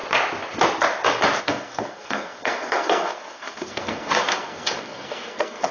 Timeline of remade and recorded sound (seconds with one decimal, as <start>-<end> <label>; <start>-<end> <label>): 0.0-1.4 recorded; 1.4-5.7 remade